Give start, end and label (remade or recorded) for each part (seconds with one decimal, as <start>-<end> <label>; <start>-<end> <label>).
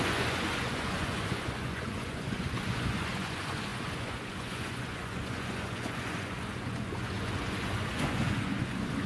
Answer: 0.0-9.1 remade